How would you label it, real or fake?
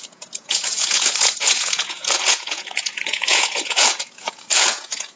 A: fake